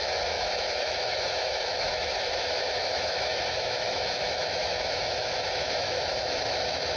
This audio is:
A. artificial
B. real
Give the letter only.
A